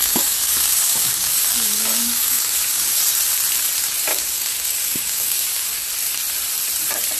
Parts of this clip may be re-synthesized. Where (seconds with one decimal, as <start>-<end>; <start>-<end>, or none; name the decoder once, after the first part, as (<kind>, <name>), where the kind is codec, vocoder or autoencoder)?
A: 0.0-3.0 (codec, DAC); 4.1-5.9